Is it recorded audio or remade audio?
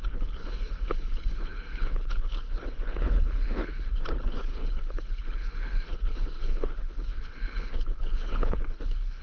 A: remade